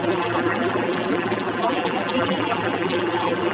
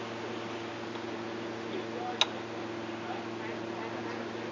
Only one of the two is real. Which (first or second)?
second